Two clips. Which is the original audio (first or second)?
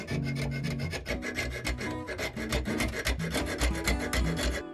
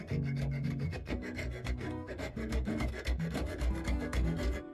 first